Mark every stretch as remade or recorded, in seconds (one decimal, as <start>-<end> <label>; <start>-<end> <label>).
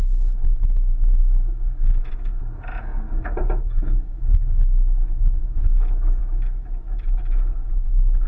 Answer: 0.0-2.4 remade; 2.4-3.6 recorded; 3.6-5.4 remade; 5.4-6.2 recorded; 6.2-8.3 remade